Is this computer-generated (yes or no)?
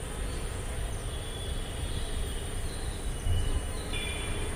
yes